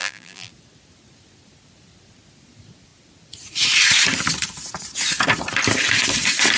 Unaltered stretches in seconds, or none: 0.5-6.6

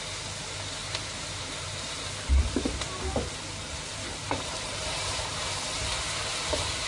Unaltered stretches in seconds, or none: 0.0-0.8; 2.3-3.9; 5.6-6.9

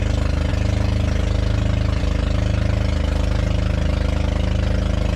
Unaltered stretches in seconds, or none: 0.0-5.2

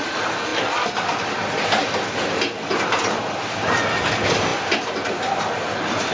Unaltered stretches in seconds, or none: 0.0-6.1

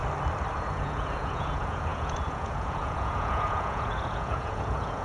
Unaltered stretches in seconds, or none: 0.0-0.5

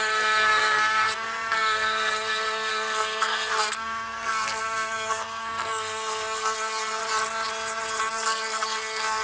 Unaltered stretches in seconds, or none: 7.0-8.1